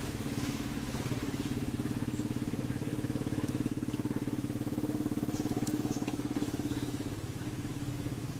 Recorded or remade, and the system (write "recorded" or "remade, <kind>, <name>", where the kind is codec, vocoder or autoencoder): remade, autoencoder, DAC-VAE